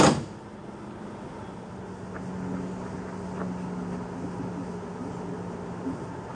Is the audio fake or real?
real